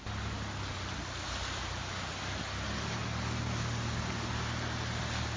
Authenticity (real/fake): real